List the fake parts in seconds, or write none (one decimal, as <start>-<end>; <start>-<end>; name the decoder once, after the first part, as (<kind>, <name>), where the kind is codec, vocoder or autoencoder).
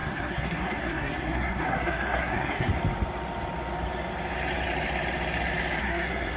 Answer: 0.0-2.7 (codec, SNAC); 5.8-6.4